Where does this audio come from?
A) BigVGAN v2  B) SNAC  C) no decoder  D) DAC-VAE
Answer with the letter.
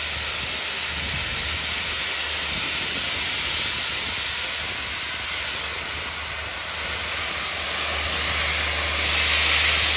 C